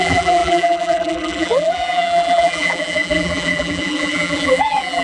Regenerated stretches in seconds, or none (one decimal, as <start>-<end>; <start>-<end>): 0.0-5.0